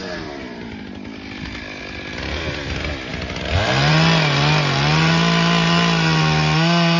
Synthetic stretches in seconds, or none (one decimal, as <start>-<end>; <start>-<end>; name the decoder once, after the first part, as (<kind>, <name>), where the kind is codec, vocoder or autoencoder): none